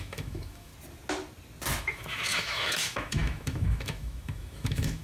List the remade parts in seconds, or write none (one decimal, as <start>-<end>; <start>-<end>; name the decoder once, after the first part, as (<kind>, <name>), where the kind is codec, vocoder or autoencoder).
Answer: 0.0-0.7 (autoencoder, DAC-VAE); 1.8-5.0